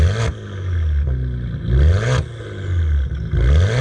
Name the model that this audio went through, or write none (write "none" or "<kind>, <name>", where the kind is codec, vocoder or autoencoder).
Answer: none